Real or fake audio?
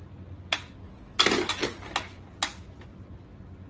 real